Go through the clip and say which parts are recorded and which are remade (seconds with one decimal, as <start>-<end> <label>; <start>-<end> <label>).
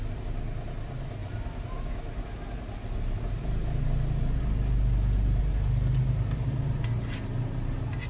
0.0-8.1 recorded